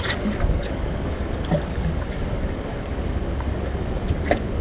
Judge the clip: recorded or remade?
remade